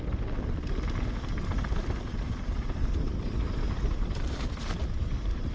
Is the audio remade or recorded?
remade